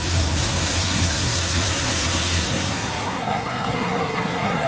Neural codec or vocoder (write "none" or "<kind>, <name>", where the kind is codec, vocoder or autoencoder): codec, SNAC